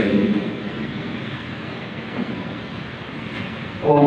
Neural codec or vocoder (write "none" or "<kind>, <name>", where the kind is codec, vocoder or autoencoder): codec, SNAC